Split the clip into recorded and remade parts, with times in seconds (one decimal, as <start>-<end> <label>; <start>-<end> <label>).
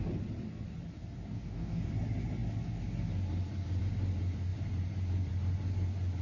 0.0-1.3 recorded; 1.3-1.9 remade; 1.9-6.2 recorded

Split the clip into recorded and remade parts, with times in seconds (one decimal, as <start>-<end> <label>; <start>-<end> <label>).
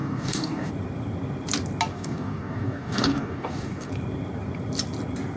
0.0-0.7 remade; 0.7-1.9 recorded; 1.9-3.9 remade; 3.9-5.4 recorded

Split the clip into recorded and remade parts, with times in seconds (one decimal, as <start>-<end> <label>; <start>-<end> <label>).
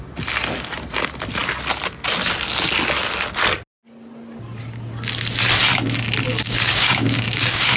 0.0-6.3 recorded; 6.3-7.8 remade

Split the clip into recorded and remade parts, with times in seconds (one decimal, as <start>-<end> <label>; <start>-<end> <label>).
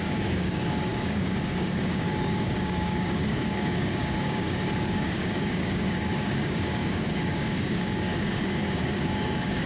0.0-9.7 remade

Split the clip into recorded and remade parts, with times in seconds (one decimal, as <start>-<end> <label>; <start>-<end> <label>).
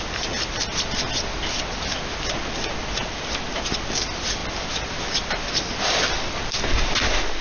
0.0-7.4 recorded